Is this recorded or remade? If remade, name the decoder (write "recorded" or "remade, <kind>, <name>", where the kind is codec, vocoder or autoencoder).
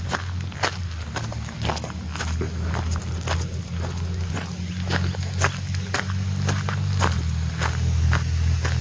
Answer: recorded